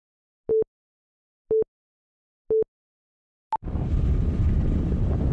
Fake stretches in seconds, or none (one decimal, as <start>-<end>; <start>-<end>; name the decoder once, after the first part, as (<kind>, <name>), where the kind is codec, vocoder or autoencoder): none